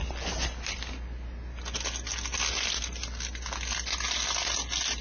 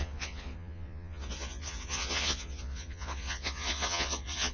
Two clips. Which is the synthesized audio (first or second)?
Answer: second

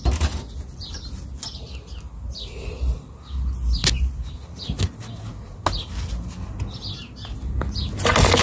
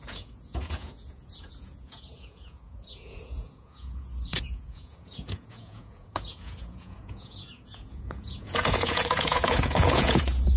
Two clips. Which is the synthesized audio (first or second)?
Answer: second